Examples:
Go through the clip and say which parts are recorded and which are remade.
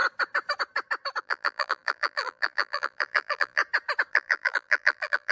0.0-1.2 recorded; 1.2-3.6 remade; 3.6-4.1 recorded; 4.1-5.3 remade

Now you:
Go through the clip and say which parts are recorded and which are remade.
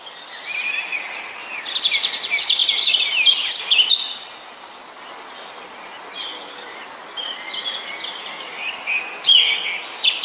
0.0-10.2 recorded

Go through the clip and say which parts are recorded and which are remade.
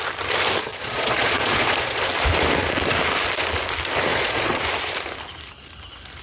0.0-0.7 recorded; 0.7-2.1 remade; 2.1-4.1 recorded; 4.1-4.6 remade; 4.6-6.2 recorded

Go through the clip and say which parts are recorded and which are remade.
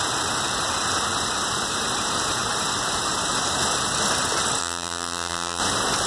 0.0-4.6 recorded; 4.6-5.6 remade; 5.6-6.1 recorded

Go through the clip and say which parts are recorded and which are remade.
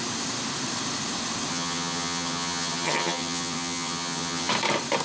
0.0-1.5 recorded; 1.5-4.5 remade; 4.5-5.0 recorded